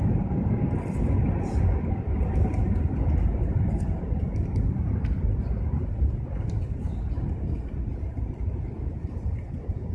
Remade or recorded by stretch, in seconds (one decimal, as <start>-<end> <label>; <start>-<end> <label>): 0.0-9.9 recorded